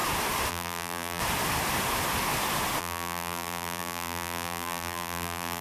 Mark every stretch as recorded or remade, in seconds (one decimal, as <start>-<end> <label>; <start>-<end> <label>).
0.0-0.5 recorded; 0.5-1.2 remade; 1.2-2.8 recorded; 2.8-5.6 remade